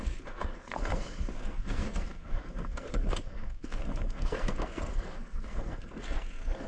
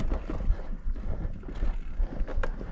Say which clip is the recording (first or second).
second